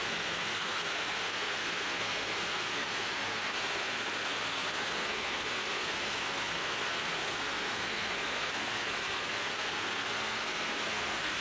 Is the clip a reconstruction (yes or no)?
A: yes